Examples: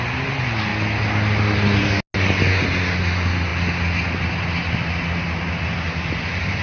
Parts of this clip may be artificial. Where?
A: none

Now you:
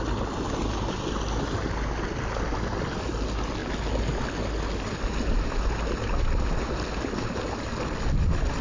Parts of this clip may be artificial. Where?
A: none

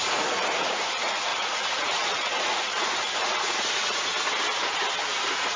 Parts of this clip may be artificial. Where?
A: 0.0-4.1 (vocoder, Vocos); 5.1-5.6

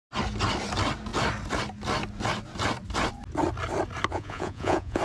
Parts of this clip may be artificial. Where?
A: 4.1-5.0 (vocoder, Vocos)

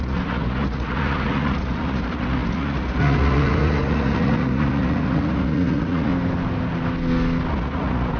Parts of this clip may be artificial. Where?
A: 0.0-6.1 (vocoder, Vocos); 7.5-8.2